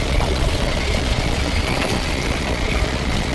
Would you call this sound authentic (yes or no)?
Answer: no